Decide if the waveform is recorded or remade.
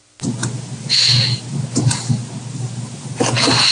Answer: recorded